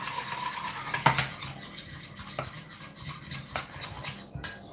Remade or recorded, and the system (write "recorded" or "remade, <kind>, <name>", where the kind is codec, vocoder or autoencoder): recorded